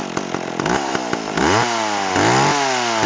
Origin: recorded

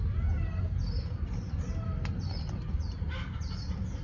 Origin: recorded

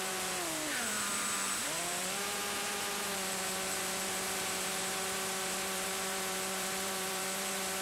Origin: remade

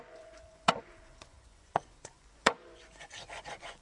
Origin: remade